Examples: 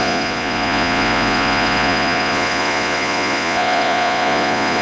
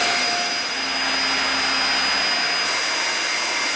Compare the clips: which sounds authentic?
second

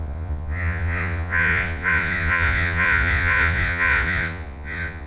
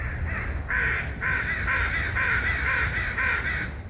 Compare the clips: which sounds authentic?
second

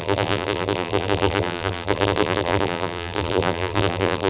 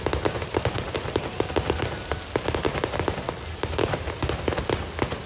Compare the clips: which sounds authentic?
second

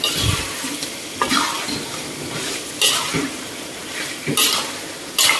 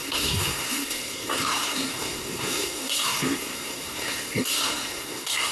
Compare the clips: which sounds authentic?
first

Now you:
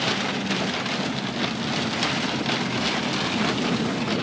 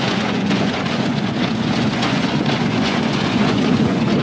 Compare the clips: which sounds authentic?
first